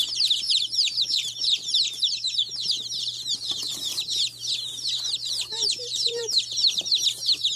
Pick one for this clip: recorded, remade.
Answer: remade